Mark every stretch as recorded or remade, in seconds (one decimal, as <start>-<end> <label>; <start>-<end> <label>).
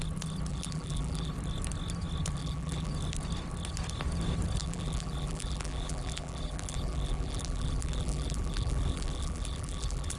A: 0.0-0.5 recorded; 0.5-1.3 remade; 1.3-2.4 recorded; 2.4-2.9 remade; 2.9-4.6 recorded; 4.6-10.2 remade